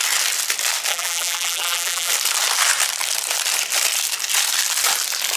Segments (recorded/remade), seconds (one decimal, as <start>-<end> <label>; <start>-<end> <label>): 0.0-0.9 recorded; 0.9-2.1 remade; 2.1-5.4 recorded